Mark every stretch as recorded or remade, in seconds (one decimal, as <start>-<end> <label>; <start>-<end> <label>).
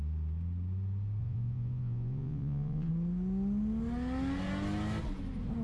0.0-1.2 recorded; 1.2-2.9 remade; 2.9-5.6 recorded